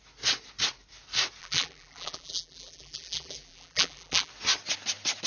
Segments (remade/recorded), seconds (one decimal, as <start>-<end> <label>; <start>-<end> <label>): 0.0-1.4 recorded; 1.4-4.3 remade; 4.3-5.3 recorded